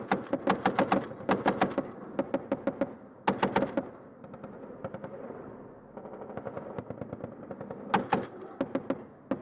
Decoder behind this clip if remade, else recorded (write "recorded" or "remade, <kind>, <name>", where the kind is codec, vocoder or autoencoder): recorded